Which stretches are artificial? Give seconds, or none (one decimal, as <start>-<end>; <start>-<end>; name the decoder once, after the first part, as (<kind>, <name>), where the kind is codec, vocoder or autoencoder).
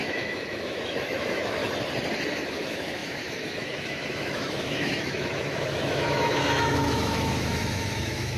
0.0-1.6 (autoencoder, DAC-VAE); 2.3-8.4